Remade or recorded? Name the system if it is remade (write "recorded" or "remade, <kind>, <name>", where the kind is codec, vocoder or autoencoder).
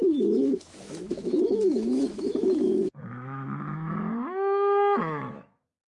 remade, autoencoder, DAC-VAE